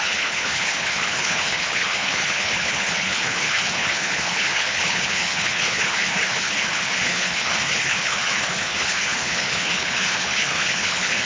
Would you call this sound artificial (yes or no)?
yes